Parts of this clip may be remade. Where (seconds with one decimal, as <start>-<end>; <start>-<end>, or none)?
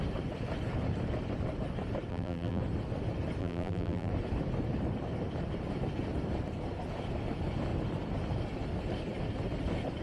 2.1-2.6; 3.4-4.1